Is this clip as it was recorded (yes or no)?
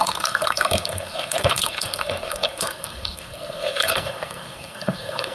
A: no